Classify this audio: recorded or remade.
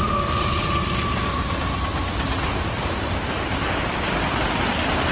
recorded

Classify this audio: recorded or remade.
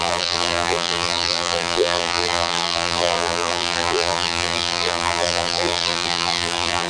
remade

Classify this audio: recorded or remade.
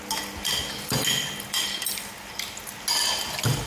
recorded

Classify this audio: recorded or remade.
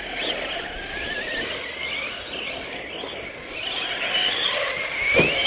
recorded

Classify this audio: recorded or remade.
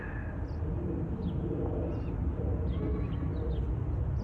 recorded